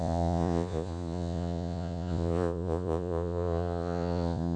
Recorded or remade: remade